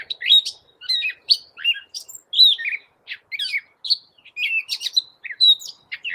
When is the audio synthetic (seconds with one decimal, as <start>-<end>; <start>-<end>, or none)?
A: 0.0-2.2; 4.6-6.1